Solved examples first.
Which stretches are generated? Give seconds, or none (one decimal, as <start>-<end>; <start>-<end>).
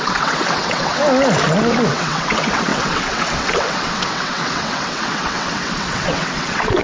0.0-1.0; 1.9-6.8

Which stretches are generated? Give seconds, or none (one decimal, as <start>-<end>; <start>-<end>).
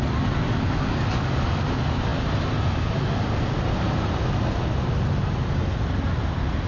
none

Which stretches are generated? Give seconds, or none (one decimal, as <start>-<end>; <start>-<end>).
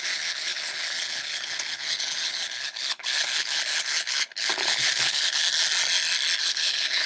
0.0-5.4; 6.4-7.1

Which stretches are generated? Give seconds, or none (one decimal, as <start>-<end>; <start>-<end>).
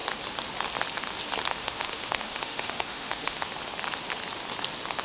1.6-3.4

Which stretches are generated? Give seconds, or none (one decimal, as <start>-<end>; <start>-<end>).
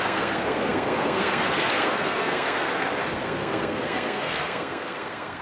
0.0-5.4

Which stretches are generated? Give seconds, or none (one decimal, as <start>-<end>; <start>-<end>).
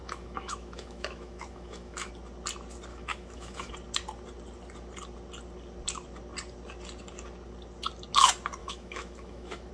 0.0-2.1; 2.9-3.7; 8.6-9.7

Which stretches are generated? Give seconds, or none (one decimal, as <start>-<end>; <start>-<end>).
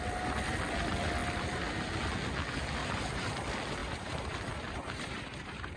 2.8-3.3; 3.8-5.8